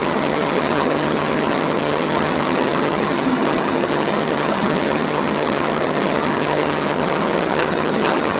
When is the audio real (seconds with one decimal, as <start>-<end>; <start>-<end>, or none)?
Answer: none